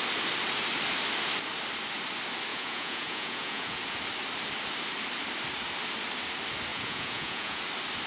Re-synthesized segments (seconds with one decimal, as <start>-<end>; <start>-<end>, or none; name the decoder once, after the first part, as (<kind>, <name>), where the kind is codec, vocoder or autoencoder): 2.5-3.8 (vocoder, Vocos); 6.7-7.6